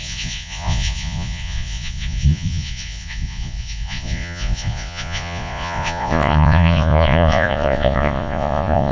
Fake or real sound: fake